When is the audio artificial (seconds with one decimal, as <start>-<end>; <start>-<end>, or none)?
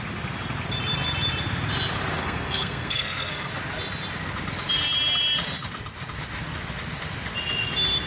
2.2-3.5